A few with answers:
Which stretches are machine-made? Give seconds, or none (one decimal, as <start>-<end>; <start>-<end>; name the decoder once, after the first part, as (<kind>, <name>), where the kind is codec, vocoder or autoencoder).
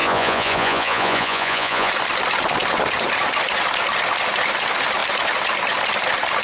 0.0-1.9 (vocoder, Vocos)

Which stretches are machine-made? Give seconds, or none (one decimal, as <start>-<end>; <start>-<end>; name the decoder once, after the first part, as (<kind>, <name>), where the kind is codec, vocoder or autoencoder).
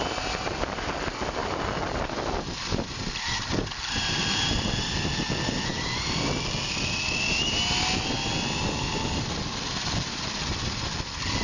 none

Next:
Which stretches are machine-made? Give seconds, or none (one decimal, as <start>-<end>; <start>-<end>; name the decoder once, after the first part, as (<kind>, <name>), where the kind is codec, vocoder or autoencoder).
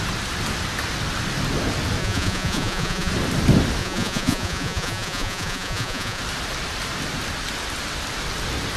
2.0-3.1 (vocoder, Vocos); 3.8-6.2